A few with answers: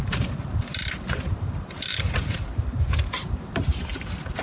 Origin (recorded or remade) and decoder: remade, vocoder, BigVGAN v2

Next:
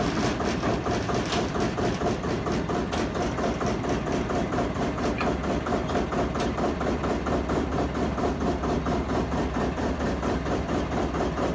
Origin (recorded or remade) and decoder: remade, vocoder, BigVGAN v2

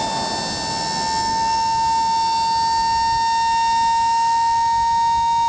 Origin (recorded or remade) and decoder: recorded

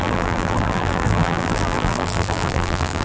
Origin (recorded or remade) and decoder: remade, vocoder, BigVGAN v2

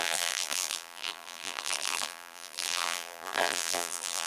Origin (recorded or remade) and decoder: remade, vocoder, BigVGAN v2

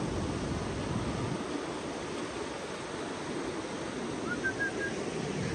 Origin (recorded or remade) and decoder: recorded